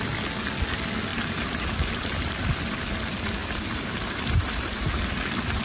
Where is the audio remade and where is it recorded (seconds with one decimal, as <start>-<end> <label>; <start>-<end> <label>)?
0.0-1.1 recorded; 1.1-2.6 remade; 2.6-3.4 recorded; 3.4-5.0 remade; 5.0-5.6 recorded